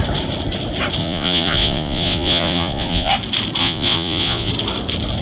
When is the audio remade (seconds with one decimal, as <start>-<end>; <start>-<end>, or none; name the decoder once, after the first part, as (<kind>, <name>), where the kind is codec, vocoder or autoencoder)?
1.0-3.1 (vocoder, Vocos); 3.6-4.5